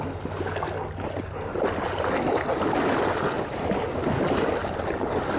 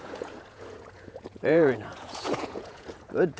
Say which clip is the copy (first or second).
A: second